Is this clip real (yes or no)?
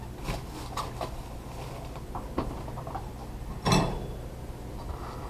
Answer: yes